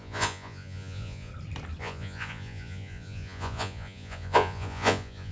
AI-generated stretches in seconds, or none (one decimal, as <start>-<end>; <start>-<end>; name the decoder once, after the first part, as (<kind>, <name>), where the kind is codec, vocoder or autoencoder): 0.0-1.3 (vocoder, Vocos); 1.8-5.3